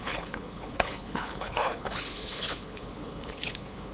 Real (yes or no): no